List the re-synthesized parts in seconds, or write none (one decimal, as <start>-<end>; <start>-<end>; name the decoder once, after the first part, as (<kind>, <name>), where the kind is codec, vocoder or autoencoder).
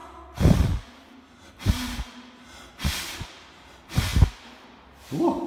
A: none